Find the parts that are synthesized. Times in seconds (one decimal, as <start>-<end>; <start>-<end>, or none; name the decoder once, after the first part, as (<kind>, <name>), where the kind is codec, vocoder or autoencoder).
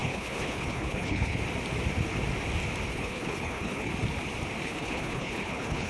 0.0-1.4 (codec, HILCodec); 2.9-3.9; 4.6-5.9